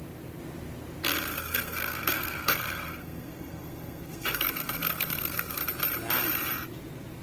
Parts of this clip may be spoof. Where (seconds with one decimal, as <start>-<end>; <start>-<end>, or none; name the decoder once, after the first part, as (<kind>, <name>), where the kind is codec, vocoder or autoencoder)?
1.3-5.6 (codec, SNAC)